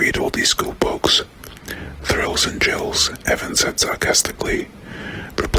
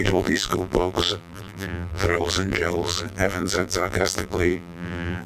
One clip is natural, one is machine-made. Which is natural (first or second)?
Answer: first